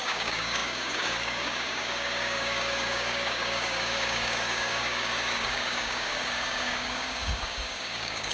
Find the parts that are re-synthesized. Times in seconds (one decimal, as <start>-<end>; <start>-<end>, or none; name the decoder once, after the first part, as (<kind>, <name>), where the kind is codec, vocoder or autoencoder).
0.0-8.3 (codec, DAC)